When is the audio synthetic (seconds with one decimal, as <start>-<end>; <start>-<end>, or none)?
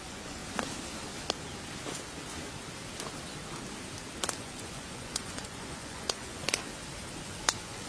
0.0-0.4; 4.4-6.4; 7.2-7.9